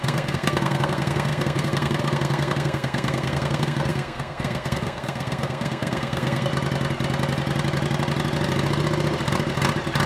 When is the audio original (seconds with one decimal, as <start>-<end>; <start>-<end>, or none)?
6.5-10.1